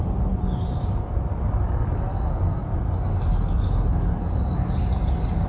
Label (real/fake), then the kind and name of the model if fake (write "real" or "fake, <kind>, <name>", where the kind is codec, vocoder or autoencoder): real